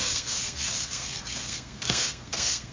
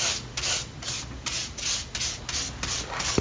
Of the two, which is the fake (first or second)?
first